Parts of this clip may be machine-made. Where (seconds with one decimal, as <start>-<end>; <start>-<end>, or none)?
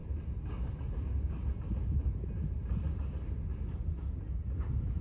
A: none